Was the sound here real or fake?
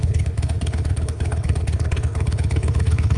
fake